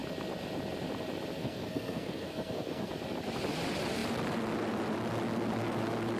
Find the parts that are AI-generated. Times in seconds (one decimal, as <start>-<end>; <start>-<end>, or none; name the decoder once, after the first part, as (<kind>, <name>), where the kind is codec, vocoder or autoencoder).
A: 1.4-2.9 (codec, SNAC)